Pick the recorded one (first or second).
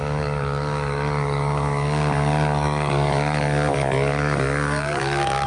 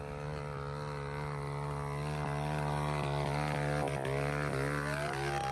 second